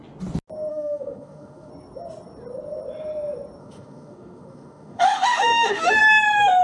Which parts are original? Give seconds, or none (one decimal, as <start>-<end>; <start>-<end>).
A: 0.0-0.7; 1.7-3.6; 6.0-6.6